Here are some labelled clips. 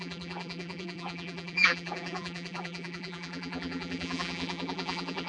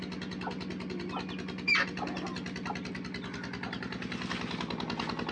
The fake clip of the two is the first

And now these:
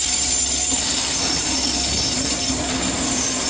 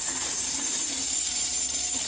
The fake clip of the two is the second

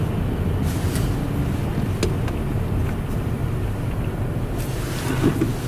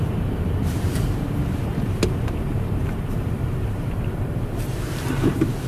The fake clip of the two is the second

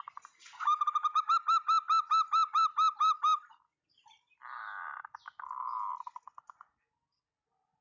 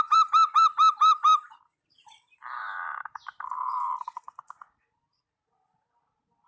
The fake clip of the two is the second